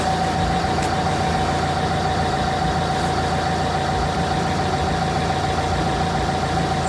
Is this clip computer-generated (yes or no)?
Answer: no